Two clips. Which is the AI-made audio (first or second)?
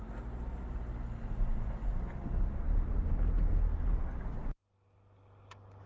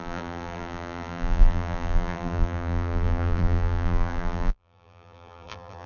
second